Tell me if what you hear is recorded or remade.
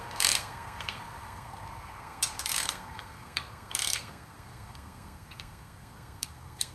remade